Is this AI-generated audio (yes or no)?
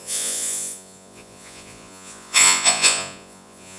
yes